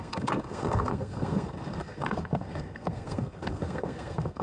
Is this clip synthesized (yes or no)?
yes